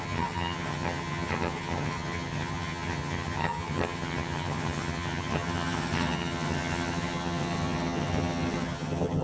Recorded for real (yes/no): no